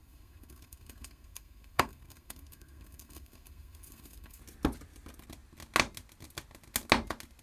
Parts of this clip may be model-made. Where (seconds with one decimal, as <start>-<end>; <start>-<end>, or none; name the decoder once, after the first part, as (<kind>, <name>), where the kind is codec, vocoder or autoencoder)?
0.0-4.4 (codec, SNAC)